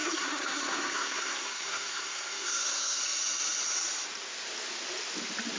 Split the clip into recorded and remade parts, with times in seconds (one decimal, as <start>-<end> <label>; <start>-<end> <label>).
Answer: 0.0-3.0 remade; 3.0-5.6 recorded